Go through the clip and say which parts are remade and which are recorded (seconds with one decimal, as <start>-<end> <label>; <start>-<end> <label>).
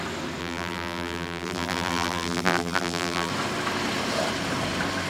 0.0-0.4 recorded; 0.4-3.3 remade; 3.3-5.1 recorded